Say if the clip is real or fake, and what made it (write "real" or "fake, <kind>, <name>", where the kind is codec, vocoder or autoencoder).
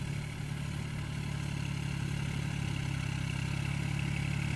real